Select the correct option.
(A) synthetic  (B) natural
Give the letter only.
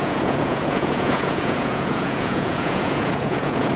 A